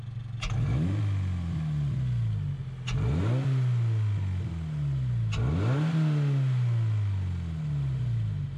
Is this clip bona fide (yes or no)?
yes